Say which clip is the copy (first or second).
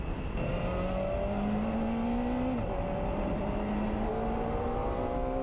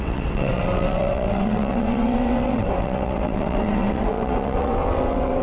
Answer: second